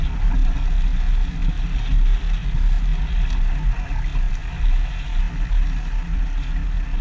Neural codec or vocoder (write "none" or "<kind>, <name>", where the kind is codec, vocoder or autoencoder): none